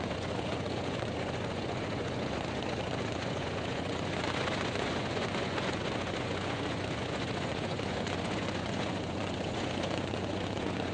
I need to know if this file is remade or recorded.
remade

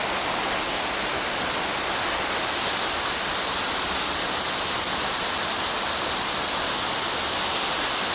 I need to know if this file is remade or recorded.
recorded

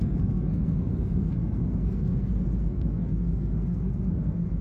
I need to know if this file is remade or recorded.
remade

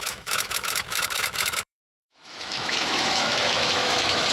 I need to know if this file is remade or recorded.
remade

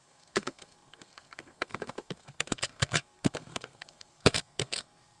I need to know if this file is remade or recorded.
remade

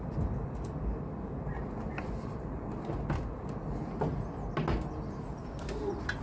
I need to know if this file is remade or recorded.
recorded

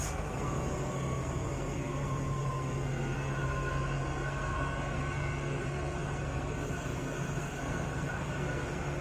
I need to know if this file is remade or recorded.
remade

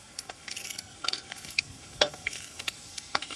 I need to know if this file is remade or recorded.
remade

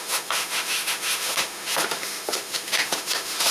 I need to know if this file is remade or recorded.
remade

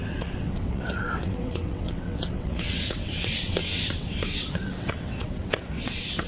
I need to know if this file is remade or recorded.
remade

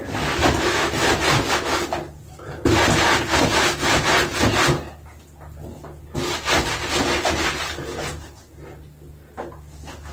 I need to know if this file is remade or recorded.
recorded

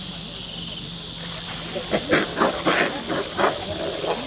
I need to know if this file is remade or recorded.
recorded